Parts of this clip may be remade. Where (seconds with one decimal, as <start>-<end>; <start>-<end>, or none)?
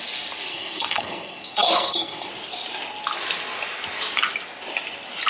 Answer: 0.5-2.3